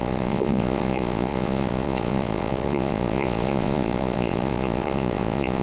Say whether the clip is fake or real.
fake